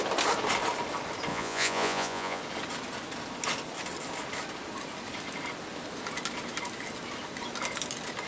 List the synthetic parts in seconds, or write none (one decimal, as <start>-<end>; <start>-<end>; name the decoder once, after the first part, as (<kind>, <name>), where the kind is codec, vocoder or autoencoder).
1.3-2.4 (vocoder, Vocos)